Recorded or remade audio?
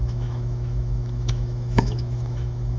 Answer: remade